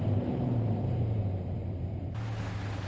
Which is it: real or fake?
real